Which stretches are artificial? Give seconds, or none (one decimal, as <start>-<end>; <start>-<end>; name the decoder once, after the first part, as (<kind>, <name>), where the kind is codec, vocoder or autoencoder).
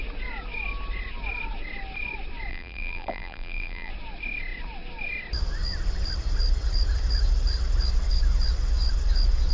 2.5-3.9 (vocoder, BigVGAN v2)